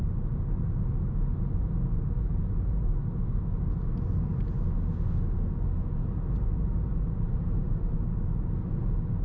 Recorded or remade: recorded